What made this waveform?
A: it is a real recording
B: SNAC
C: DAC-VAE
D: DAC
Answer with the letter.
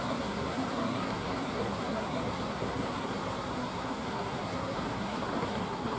B